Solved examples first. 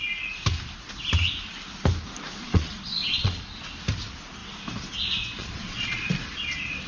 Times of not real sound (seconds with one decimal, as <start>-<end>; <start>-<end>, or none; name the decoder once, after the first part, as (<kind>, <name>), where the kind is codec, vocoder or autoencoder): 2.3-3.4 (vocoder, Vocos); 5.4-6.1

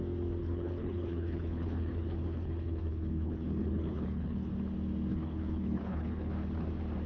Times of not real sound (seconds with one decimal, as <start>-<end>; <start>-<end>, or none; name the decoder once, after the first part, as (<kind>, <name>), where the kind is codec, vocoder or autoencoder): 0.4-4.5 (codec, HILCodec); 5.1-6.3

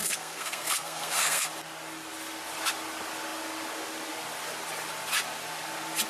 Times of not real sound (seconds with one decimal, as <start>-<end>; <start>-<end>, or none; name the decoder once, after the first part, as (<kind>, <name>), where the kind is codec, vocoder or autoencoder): 0.0-1.5 (codec, SNAC)

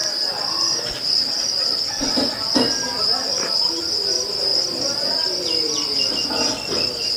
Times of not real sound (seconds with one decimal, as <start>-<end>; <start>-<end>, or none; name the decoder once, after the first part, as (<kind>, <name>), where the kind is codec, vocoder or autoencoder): 0.0-3.8 (vocoder, BigVGAN v2); 4.5-6.1